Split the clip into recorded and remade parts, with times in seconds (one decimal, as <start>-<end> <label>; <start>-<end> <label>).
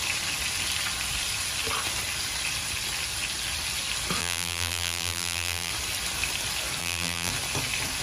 0.0-4.2 recorded; 4.2-5.7 remade; 5.7-6.8 recorded; 6.8-7.3 remade; 7.3-8.0 recorded